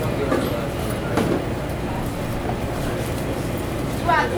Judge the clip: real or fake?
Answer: real